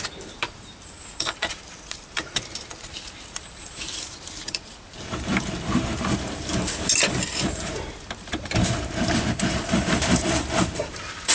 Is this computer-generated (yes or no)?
yes